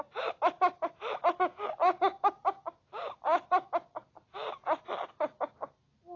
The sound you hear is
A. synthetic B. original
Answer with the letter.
B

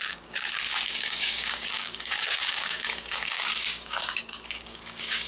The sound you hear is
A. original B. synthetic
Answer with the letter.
B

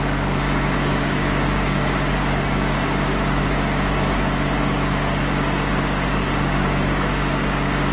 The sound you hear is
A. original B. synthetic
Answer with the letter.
B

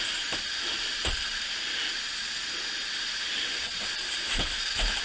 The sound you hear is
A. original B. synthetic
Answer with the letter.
A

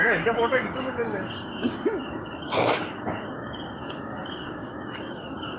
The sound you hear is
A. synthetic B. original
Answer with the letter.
A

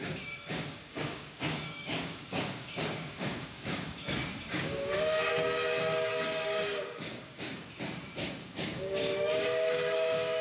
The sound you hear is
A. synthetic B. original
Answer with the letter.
A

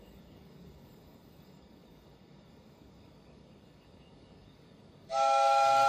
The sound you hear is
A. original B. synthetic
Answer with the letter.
B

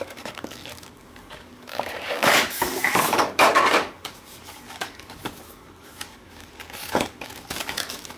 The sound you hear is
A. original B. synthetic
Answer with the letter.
B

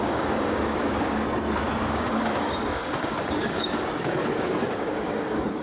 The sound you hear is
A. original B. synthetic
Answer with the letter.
B